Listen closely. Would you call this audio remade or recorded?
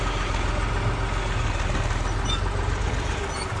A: recorded